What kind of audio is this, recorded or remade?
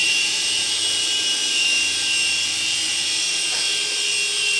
remade